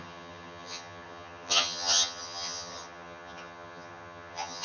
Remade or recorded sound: remade